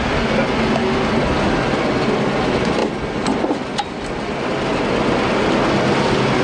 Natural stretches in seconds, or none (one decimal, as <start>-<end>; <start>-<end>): 0.0-6.4